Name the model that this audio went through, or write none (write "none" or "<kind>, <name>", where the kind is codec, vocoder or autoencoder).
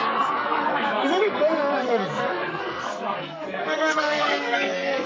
codec, SNAC